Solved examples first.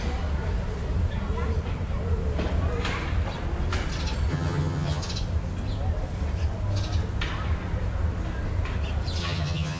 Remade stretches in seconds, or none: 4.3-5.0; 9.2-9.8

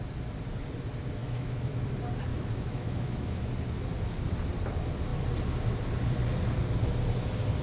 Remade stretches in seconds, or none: 1.2-1.8; 2.3-3.5

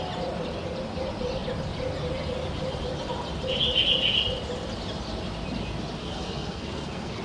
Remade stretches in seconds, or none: 6.0-7.2

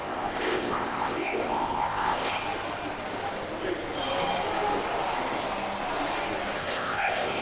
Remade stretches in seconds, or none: 0.0-2.4; 6.6-7.4

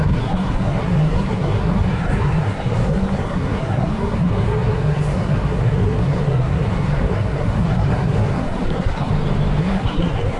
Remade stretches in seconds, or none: 0.0-9.1; 9.6-10.4

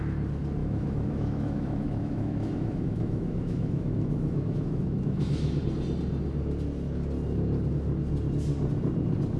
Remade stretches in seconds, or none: 0.6-5.6